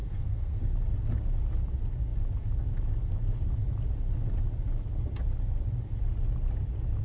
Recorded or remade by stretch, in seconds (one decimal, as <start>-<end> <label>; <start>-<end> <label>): 0.0-0.6 remade; 0.6-7.0 recorded